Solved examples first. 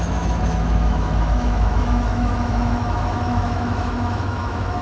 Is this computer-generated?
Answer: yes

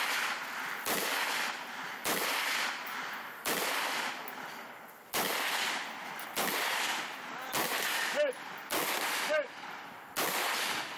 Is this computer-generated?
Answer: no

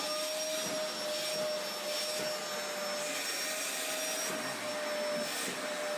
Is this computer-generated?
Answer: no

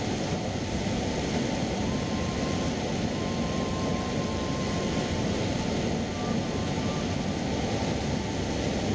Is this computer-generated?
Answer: no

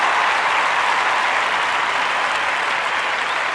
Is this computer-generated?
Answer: no